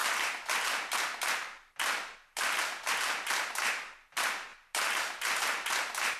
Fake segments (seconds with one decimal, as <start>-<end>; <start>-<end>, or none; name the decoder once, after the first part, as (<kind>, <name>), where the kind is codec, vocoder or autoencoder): none